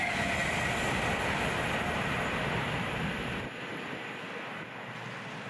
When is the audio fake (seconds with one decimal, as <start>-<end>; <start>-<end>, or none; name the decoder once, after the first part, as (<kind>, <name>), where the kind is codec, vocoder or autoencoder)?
none